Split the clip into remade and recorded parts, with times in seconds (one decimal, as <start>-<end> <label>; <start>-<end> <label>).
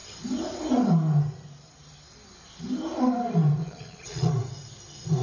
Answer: 0.0-3.6 recorded; 3.6-4.3 remade; 4.3-5.2 recorded